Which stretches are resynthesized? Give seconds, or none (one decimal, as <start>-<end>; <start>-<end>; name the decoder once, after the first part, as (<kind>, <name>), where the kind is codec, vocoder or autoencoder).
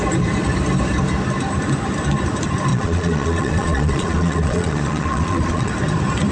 2.7-5.7 (vocoder, Vocos)